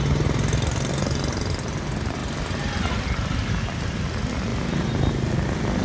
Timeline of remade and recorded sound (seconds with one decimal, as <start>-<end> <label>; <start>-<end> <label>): 0.0-5.8 recorded